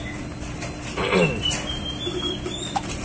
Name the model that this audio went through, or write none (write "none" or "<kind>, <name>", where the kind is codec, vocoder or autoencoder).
none